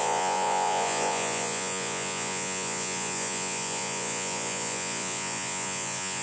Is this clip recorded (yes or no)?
no